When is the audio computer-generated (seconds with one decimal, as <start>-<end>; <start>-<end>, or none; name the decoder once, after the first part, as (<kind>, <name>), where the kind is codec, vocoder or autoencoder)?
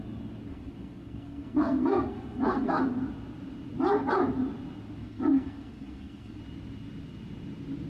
0.5-2.8 (codec, SNAC); 5.0-6.4